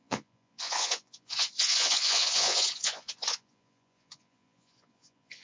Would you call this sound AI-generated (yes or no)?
yes